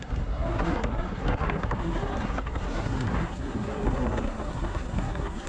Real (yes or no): no